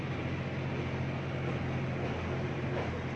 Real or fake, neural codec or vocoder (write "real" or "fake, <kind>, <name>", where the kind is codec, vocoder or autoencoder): real